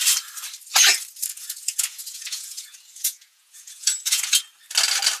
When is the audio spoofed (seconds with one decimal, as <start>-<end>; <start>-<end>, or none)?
1.3-4.4